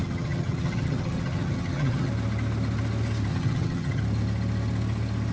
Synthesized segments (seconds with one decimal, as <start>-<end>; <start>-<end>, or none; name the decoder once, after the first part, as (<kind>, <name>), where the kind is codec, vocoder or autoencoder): 0.0-2.1 (vocoder, HiFi-GAN); 3.3-4.0